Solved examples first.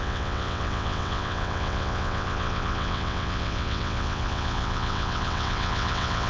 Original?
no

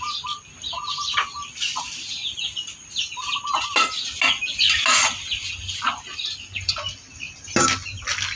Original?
yes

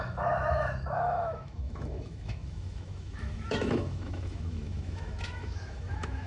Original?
no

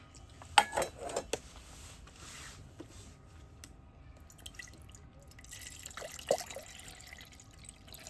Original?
yes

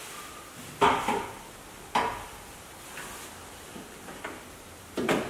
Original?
no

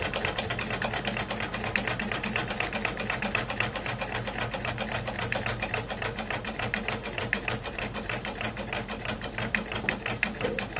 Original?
no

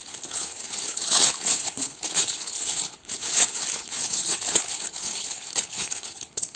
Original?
no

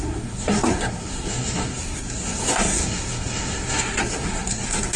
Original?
no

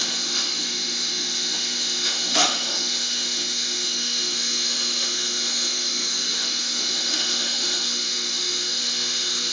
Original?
no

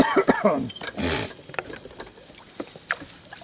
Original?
no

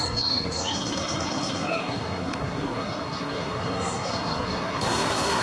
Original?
no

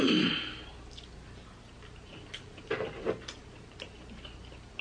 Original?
yes